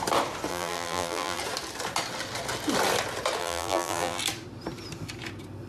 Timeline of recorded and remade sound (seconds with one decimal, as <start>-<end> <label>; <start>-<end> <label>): 0.0-0.5 recorded; 0.5-1.4 remade; 1.4-3.4 recorded; 3.4-4.2 remade; 4.2-5.7 recorded